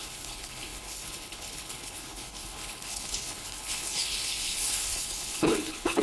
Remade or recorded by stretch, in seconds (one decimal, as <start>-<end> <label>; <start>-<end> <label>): 0.0-6.0 remade